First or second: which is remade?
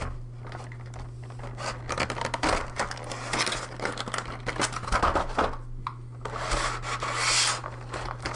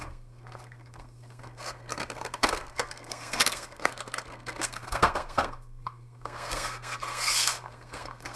second